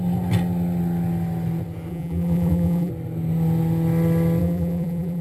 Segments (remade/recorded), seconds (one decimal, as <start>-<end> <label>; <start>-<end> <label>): 0.0-1.9 recorded; 1.9-2.9 remade; 2.9-4.4 recorded; 4.4-5.2 remade